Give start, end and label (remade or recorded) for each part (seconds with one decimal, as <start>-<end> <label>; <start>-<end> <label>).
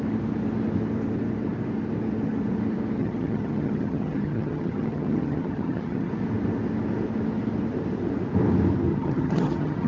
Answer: 0.0-3.0 recorded; 3.0-6.1 remade; 6.1-8.9 recorded; 8.9-9.9 remade